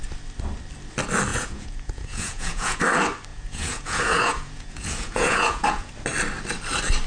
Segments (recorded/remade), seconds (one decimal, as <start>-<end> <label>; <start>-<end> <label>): 0.0-1.3 recorded; 1.3-2.8 remade; 2.8-3.3 recorded; 3.3-5.9 remade; 5.9-7.1 recorded